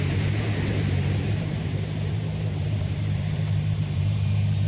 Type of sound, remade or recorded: remade